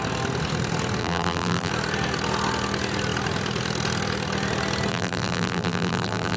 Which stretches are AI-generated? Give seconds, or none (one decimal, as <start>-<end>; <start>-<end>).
1.0-1.7; 4.9-6.4